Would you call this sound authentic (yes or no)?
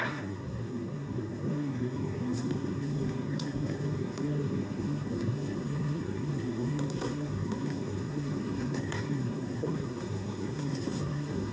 no